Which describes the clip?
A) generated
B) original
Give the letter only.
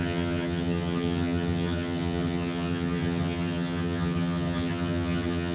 A